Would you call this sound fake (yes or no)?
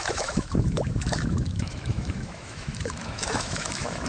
yes